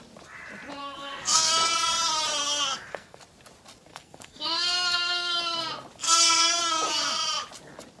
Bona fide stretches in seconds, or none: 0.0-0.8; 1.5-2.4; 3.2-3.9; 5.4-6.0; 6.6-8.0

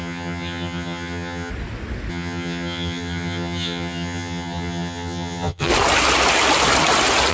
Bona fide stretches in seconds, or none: 1.5-2.1; 5.7-7.3

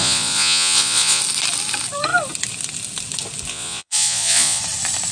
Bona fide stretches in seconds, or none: 1.2-3.5; 4.6-5.1